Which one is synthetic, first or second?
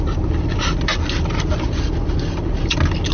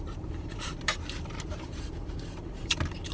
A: second